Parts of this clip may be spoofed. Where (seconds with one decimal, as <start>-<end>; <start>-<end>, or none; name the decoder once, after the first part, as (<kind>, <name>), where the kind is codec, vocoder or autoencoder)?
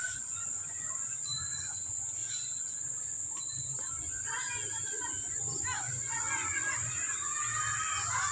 0.0-2.2 (vocoder, Vocos); 5.9-7.3